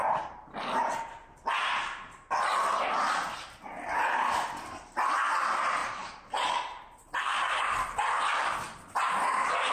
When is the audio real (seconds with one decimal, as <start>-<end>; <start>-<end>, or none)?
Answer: 0.0-1.2; 2.3-5.8; 7.6-9.7